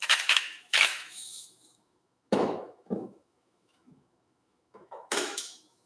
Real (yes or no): no